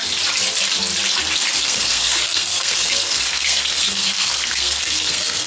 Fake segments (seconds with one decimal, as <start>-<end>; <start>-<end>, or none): 1.6-5.5